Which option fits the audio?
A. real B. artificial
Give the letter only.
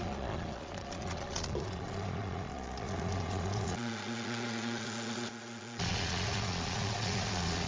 B